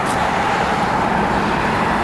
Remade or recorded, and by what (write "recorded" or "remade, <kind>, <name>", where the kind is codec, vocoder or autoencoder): remade, vocoder, BigVGAN v2